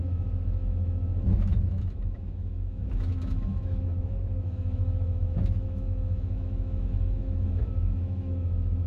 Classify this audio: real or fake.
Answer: fake